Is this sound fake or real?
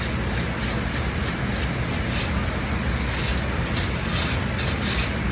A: real